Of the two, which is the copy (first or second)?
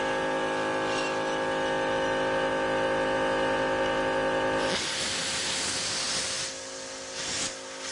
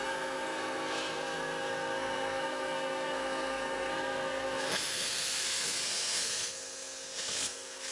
second